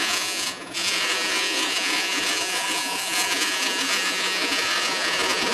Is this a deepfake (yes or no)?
yes